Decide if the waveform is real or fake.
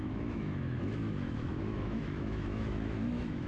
fake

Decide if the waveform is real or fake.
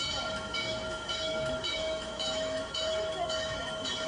fake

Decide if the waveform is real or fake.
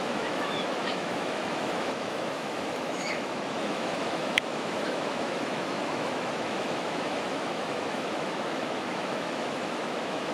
fake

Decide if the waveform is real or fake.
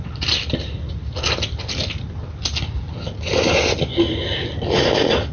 real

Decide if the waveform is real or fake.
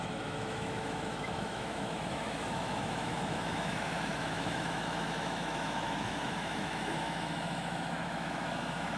fake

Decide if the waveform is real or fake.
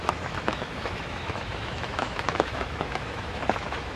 fake